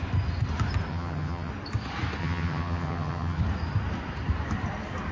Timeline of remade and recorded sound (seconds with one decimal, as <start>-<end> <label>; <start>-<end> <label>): 0.0-0.9 recorded; 0.9-1.5 remade; 1.5-2.2 recorded; 2.2-3.4 remade; 3.4-5.1 recorded

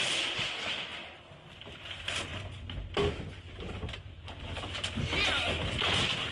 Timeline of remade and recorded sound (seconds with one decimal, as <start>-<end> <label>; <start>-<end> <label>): 0.0-6.3 recorded